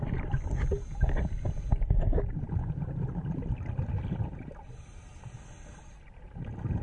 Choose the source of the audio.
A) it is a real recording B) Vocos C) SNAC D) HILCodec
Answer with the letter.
A